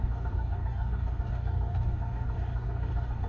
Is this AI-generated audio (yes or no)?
yes